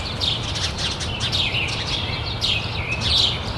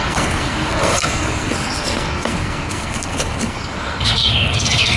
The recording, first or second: first